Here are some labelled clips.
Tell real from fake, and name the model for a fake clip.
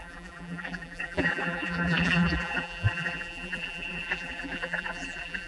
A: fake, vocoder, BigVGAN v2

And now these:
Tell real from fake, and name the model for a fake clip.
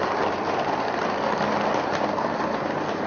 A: fake, vocoder, BigVGAN v2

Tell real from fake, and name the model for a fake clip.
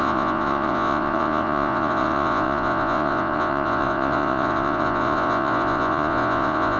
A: fake, vocoder, Vocos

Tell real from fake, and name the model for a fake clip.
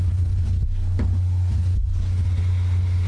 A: real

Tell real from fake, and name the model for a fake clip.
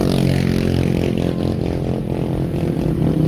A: real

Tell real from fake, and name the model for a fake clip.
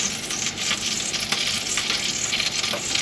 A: real